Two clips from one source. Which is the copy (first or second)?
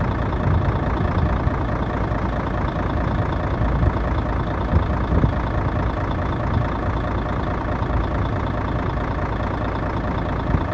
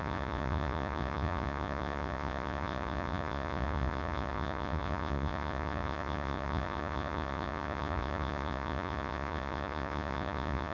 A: second